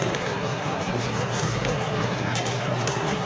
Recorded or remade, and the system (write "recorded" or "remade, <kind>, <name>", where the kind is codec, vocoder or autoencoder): remade, codec, SNAC